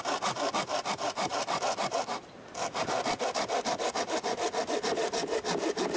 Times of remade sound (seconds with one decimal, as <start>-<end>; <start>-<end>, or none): none